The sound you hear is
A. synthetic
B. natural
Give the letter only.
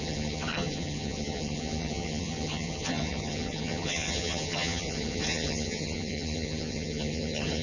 A